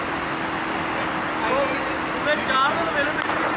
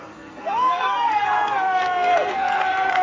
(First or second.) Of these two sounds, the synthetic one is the second